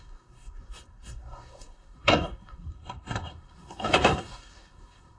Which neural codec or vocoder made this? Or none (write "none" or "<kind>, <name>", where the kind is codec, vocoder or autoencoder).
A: codec, SNAC